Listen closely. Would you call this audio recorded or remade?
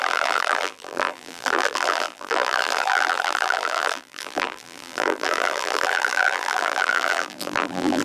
remade